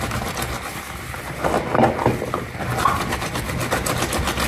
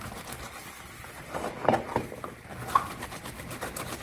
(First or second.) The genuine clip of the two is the first